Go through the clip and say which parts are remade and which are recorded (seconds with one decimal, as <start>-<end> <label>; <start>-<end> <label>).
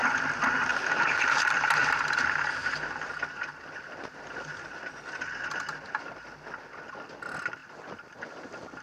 0.0-8.8 recorded